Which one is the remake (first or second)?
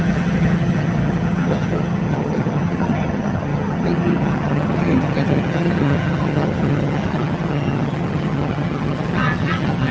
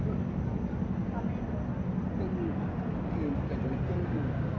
first